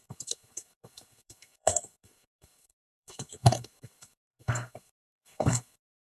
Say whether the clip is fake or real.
fake